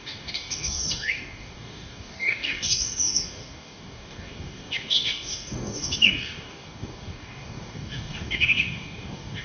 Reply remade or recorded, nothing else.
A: remade